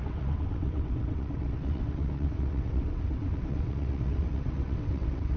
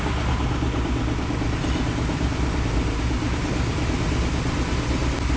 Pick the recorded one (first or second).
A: second